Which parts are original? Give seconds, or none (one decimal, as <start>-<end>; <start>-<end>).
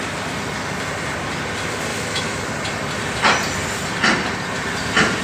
0.0-1.9; 2.4-5.2